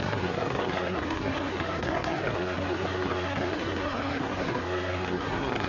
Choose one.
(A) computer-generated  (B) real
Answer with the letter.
A